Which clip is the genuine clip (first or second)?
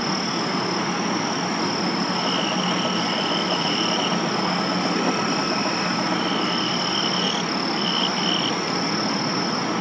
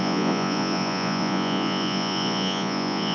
first